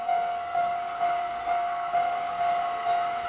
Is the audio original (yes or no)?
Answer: no